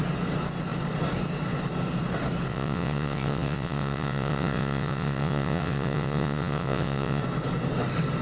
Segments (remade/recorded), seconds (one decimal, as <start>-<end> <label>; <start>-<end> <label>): 0.0-2.5 recorded; 2.5-7.2 remade; 7.2-8.2 recorded